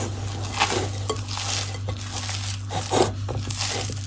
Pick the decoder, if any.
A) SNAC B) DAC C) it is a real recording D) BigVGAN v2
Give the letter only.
C